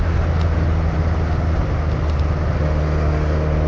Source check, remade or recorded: recorded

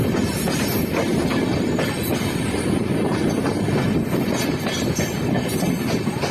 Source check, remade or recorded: remade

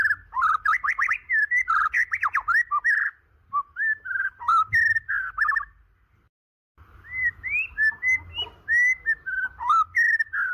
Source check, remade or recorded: recorded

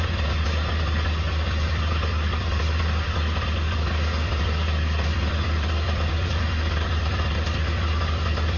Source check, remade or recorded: remade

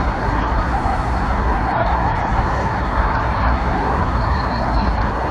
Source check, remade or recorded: remade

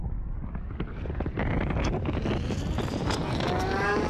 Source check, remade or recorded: recorded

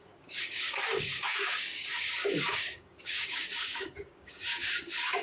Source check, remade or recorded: remade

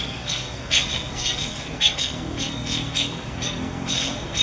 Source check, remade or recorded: remade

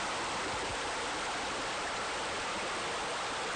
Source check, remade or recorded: recorded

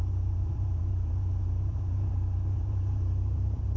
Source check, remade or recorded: remade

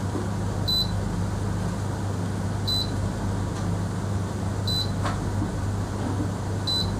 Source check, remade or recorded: recorded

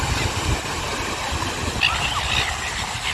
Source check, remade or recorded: recorded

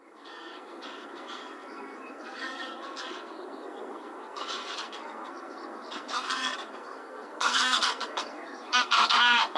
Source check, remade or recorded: remade